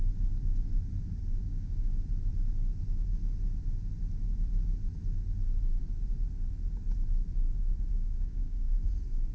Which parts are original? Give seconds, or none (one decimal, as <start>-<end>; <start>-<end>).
0.0-1.4; 1.9-7.9; 8.8-9.3